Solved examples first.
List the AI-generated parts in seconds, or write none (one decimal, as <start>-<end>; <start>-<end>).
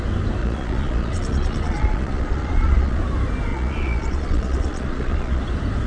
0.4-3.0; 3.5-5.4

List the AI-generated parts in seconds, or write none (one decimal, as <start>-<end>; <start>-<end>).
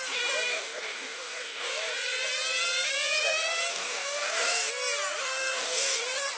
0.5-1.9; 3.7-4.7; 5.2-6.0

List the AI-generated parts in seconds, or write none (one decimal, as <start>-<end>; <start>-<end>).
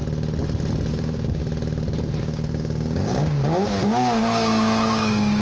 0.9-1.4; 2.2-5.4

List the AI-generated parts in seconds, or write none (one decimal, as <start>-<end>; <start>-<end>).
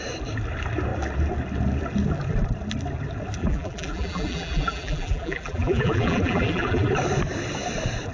3.4-6.9